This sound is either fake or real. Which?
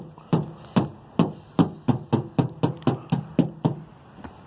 real